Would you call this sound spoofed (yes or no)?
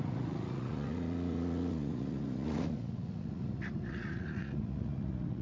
yes